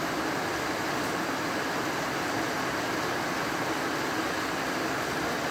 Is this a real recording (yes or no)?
yes